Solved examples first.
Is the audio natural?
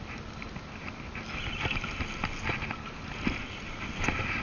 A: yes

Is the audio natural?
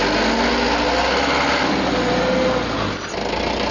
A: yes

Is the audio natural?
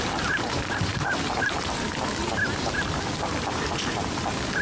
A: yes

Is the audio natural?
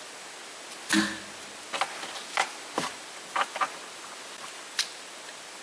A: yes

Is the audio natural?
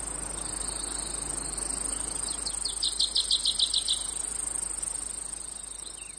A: yes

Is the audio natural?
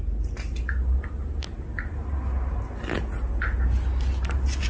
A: yes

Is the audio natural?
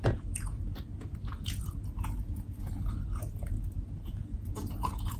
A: no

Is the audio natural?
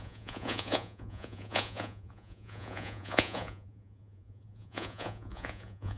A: no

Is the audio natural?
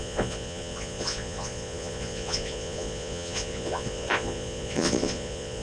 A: no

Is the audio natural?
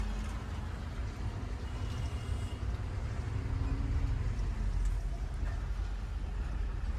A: yes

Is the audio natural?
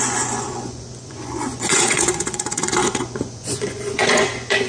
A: no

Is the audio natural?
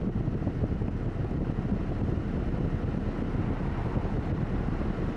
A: yes